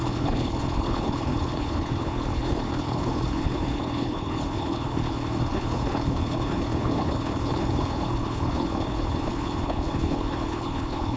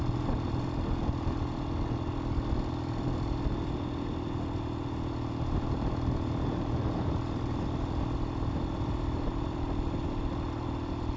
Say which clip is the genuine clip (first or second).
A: second